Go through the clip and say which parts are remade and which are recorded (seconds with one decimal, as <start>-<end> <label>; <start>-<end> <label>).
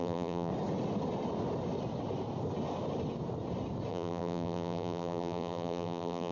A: 0.0-0.5 remade; 0.5-3.9 recorded; 3.9-6.3 remade